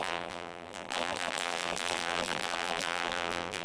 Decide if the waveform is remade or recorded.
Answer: remade